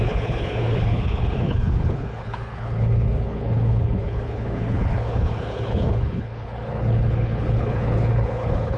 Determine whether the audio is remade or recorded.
remade